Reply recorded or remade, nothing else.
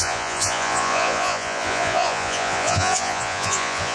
remade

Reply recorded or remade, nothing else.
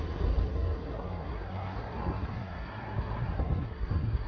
remade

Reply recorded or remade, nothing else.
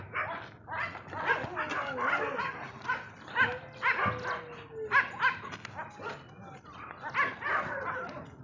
recorded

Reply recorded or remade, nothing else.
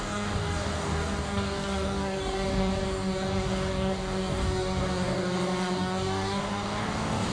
remade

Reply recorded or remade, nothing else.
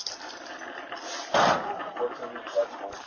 recorded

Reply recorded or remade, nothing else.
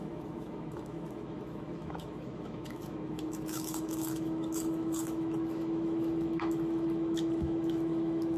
remade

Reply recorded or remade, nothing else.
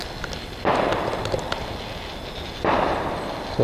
recorded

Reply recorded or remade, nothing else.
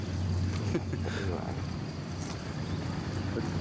recorded